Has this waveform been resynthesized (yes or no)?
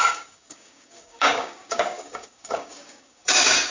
yes